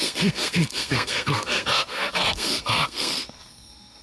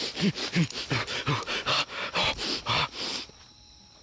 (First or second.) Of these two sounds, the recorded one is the second